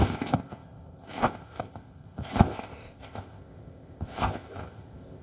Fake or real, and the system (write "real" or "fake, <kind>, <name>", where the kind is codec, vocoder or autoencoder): fake, codec, ZipCodec